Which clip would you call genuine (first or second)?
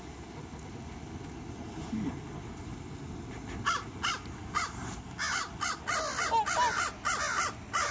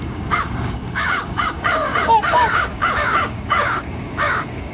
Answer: first